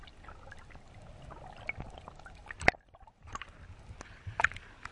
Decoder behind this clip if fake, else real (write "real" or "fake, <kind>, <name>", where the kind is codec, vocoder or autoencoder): real